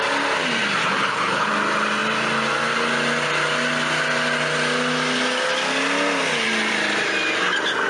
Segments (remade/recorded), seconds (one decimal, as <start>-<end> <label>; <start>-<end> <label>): 0.0-0.8 recorded; 0.8-1.5 remade; 1.5-7.9 recorded